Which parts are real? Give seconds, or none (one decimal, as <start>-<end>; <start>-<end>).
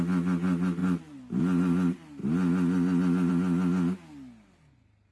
0.0-0.8; 1.4-5.1